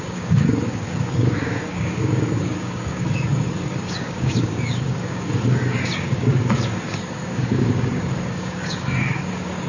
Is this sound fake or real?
fake